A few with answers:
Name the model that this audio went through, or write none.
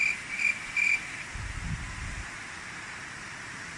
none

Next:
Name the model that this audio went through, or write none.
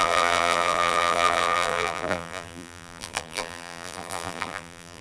vocoder, BigVGAN v2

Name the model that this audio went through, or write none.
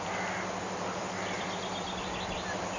vocoder, BigVGAN v2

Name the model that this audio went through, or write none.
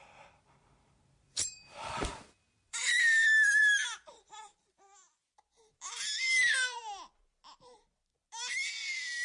vocoder, BigVGAN v2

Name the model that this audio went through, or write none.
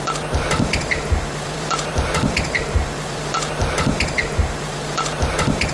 vocoder, BigVGAN v2